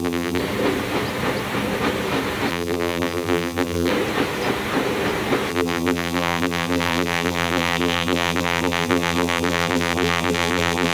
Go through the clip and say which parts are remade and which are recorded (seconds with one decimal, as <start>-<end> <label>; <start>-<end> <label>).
0.0-0.4 remade; 0.4-2.5 recorded; 2.5-3.9 remade; 3.9-5.5 recorded; 5.5-10.9 remade